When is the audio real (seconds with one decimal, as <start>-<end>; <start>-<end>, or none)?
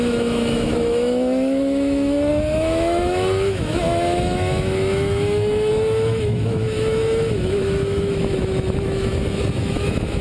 9.1-9.6